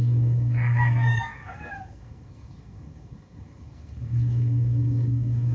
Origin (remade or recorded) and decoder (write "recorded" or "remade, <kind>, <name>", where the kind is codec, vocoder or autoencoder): remade, codec, SNAC